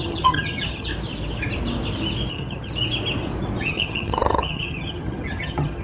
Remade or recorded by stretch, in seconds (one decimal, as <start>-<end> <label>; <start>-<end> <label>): 0.0-0.9 remade; 0.9-2.3 recorded; 2.3-2.7 remade; 2.7-3.6 recorded; 3.6-5.8 remade